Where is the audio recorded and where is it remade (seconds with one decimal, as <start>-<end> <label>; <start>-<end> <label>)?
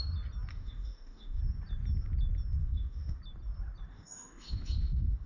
0.0-0.5 recorded; 0.5-1.4 remade; 1.4-2.6 recorded; 2.6-3.2 remade; 3.2-3.9 recorded; 3.9-5.3 remade